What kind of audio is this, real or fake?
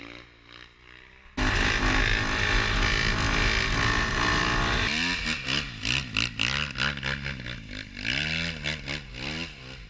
real